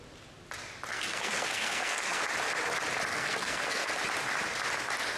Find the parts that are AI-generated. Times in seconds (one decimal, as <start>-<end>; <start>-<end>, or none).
0.9-2.2; 3.1-3.9